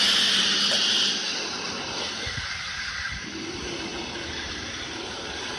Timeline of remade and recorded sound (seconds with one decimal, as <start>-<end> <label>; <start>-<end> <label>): 0.0-5.6 recorded